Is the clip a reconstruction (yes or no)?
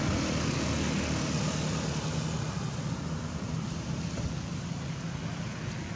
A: no